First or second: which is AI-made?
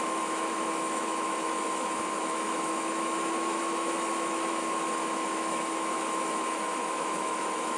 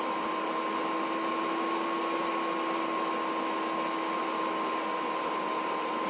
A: first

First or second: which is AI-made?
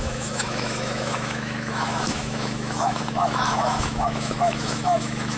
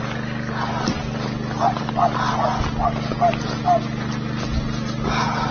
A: first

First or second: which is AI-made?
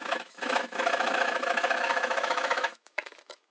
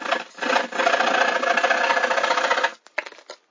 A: first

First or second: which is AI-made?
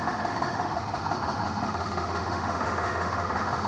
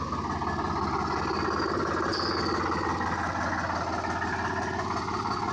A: first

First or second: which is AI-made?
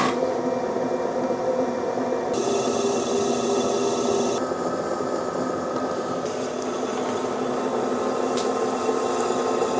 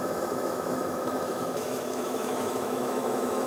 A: second